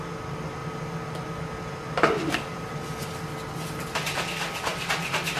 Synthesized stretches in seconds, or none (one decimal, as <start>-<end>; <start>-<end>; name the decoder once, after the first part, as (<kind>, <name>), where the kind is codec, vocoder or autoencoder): none